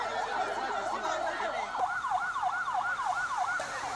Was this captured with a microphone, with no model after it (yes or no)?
yes